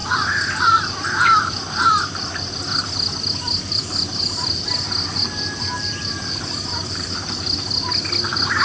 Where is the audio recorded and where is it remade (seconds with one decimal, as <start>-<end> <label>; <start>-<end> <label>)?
0.0-8.6 recorded